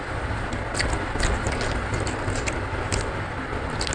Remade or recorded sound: recorded